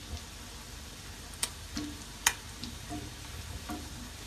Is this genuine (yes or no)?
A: yes